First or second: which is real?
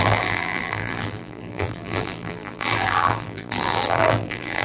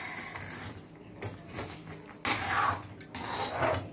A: second